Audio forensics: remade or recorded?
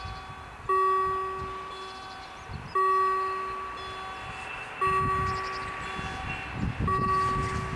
recorded